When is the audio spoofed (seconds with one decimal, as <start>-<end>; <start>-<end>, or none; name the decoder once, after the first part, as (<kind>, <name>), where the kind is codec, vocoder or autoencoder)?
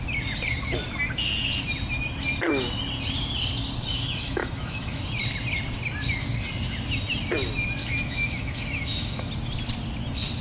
3.9-5.0 (autoencoder, DAC-VAE); 7.8-9.3